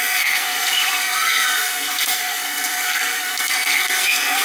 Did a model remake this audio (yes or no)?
yes